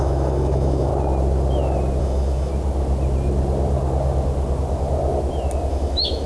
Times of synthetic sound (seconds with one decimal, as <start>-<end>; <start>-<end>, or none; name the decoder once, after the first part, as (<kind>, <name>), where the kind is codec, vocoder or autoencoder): 0.0-0.9 (autoencoder, DAC-VAE); 2.0-2.5; 5.7-6.3